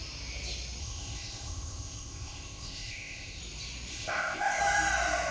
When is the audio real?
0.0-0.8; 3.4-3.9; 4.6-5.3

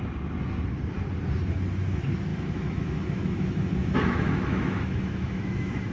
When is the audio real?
0.0-2.3